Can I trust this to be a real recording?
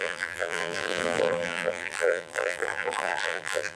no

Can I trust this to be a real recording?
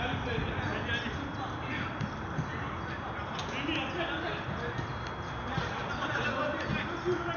yes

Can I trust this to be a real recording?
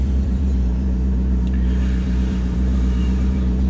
no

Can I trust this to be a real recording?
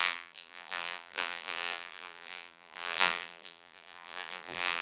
no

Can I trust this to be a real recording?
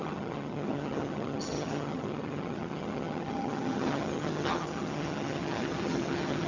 no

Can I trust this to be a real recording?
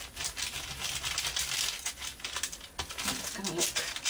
yes